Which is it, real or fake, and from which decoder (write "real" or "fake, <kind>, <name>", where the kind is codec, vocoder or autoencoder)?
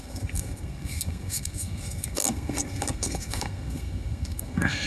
fake, codec, SNAC